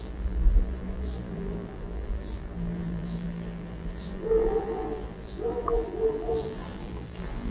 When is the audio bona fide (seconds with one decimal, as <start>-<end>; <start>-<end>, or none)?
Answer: none